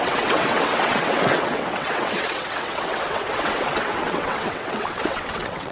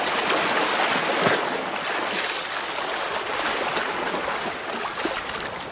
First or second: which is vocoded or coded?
first